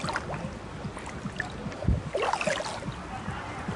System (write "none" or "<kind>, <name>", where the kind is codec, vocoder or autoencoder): none